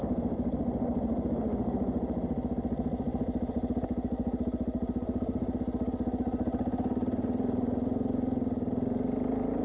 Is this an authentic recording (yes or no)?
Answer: yes